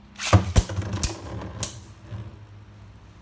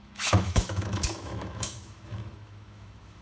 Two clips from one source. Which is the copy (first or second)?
second